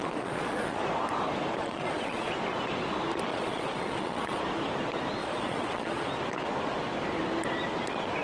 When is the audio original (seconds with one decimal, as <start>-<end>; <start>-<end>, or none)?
0.8-1.6; 2.3-3.3; 4.4-5.2; 6.1-8.2